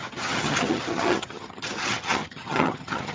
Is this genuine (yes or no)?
no